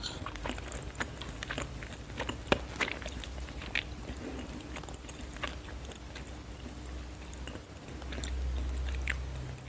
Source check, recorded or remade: recorded